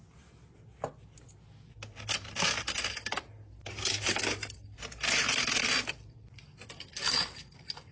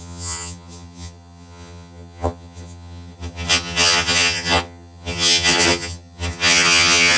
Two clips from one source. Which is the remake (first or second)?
second